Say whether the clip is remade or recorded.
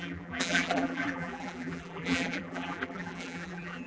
remade